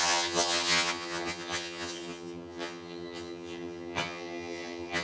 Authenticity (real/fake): fake